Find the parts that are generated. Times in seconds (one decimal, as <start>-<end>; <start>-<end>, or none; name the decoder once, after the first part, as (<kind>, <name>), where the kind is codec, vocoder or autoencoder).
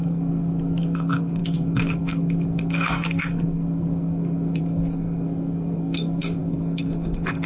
0.0-7.5 (codec, SNAC)